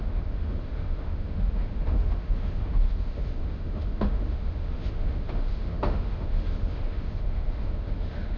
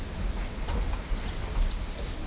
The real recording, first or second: second